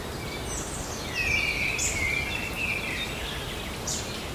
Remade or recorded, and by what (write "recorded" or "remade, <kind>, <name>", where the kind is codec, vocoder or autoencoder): recorded